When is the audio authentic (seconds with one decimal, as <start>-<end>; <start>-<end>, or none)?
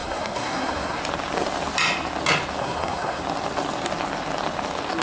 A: 1.0-2.6; 3.2-5.0